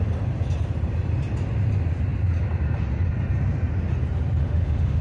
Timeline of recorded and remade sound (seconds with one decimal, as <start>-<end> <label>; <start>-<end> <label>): 0.0-4.4 recorded; 4.4-5.0 remade